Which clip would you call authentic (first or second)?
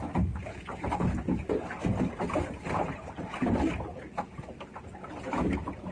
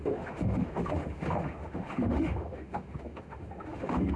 first